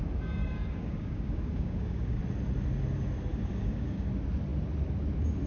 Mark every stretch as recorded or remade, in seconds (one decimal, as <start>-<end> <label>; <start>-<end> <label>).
0.0-0.4 recorded; 0.4-2.2 remade; 2.2-3.3 recorded; 3.3-4.1 remade; 4.1-5.5 recorded